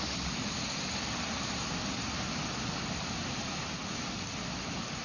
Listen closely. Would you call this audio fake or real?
real